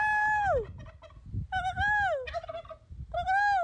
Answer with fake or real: real